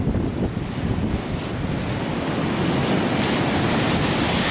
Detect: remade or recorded recorded